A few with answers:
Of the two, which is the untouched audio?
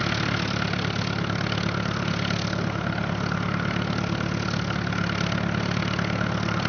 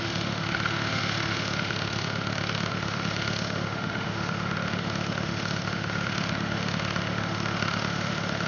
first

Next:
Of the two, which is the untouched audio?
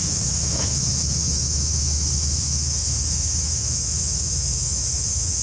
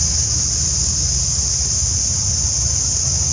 second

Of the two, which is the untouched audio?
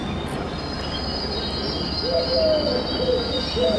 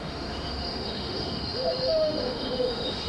first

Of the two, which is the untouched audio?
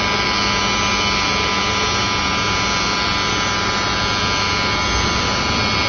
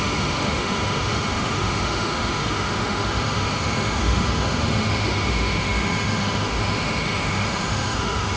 first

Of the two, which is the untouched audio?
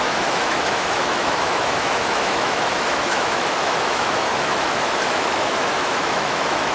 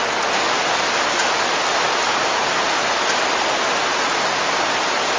second